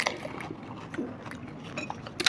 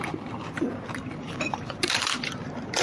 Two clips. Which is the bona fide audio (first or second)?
first